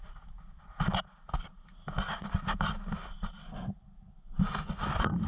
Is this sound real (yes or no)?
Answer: yes